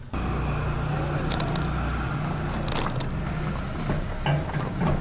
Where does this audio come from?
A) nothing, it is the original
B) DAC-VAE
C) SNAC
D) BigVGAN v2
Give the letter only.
A